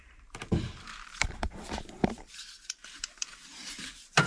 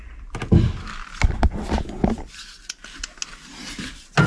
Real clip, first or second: second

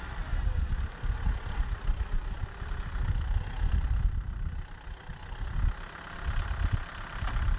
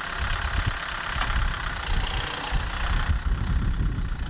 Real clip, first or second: second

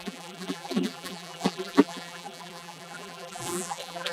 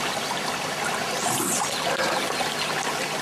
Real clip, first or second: second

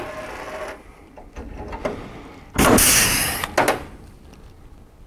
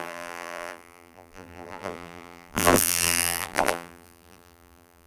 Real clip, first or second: first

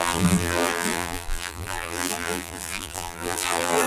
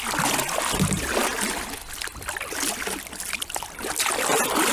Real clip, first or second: second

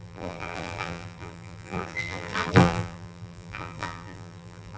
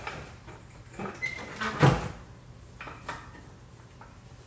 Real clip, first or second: second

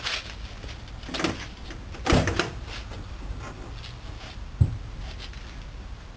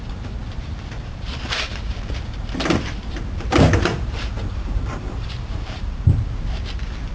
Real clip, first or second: first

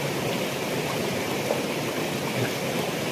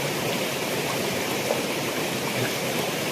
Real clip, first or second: first